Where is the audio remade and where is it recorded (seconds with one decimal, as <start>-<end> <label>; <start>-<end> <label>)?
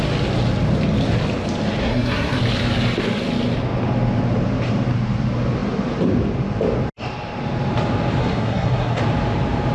0.0-1.8 recorded; 1.8-2.4 remade; 2.4-8.2 recorded; 8.2-9.0 remade; 9.0-9.7 recorded